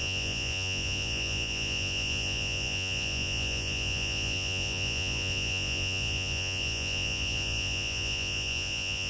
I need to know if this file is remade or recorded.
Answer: remade